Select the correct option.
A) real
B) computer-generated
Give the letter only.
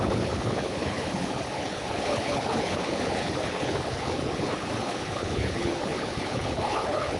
B